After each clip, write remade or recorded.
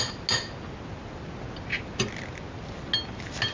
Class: recorded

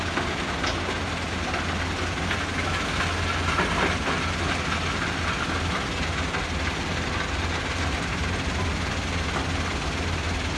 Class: recorded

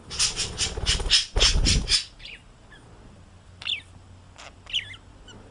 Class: recorded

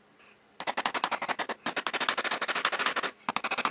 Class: recorded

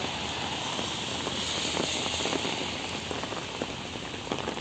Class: recorded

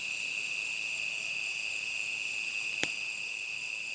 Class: recorded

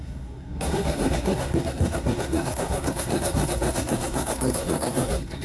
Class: remade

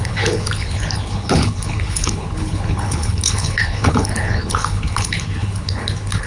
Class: remade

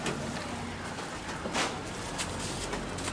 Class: recorded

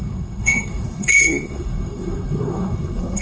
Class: remade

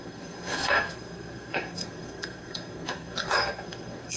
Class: remade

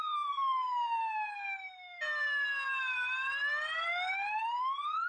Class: recorded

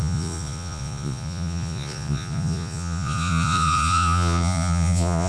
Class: remade